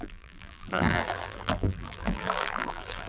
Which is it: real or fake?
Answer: fake